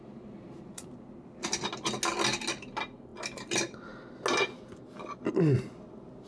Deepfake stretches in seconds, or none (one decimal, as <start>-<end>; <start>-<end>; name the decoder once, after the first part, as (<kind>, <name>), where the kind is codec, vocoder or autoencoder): none

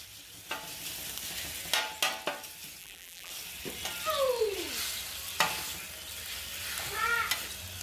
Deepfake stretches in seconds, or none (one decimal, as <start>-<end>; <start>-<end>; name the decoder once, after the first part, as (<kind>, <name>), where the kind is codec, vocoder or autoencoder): 2.8-3.3 (vocoder, BigVGAN v2)

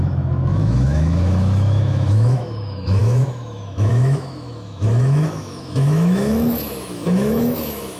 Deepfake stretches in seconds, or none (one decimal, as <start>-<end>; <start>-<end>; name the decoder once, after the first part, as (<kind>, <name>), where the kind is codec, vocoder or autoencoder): 0.0-8.0 (autoencoder, DAC-VAE)

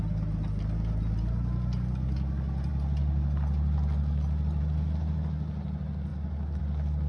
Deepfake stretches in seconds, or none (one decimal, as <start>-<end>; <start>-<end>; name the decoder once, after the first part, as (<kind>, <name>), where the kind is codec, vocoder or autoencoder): none

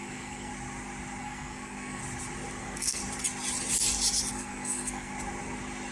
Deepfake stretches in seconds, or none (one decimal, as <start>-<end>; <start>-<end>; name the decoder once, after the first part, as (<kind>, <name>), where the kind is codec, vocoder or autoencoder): 0.0-0.5 (codec, SNAC); 1.2-2.0; 2.6-3.0; 4.3-5.1

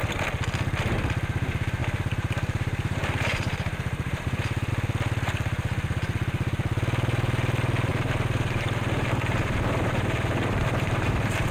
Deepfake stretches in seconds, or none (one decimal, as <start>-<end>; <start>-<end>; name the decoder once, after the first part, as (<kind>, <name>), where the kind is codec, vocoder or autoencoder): 1.8-4.7 (vocoder, BigVGAN v2); 7.9-11.5

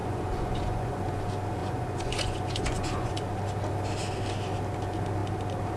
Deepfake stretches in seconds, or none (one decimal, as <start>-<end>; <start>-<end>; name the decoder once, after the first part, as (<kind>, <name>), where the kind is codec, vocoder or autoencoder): 0.0-1.2 (vocoder, Vocos); 1.6-3.1

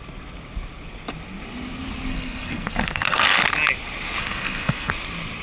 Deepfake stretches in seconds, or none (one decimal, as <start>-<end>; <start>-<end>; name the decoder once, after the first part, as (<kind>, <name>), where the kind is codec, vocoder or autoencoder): 2.1-3.4 (codec, SNAC); 4.2-4.9